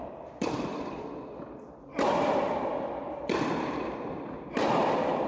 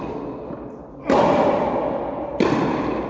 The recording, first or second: second